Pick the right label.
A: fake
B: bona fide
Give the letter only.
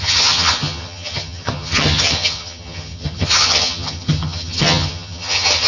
A